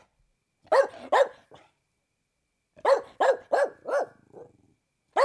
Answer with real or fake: real